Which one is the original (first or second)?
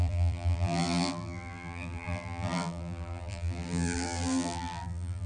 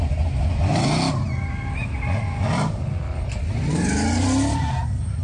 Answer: second